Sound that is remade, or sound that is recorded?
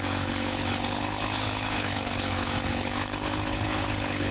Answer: remade